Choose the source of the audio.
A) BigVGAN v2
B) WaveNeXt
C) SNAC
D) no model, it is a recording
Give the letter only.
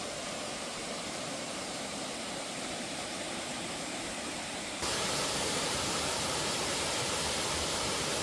A